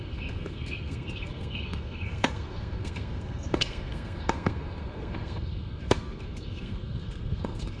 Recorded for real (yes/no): no